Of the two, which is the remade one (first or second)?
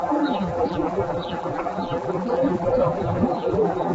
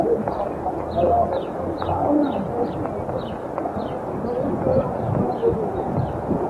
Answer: first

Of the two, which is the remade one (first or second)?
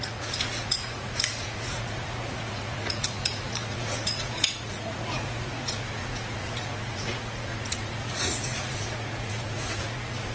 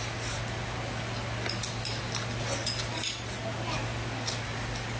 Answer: first